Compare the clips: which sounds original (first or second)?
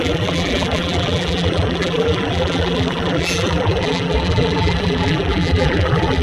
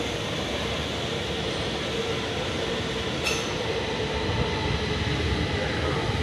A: second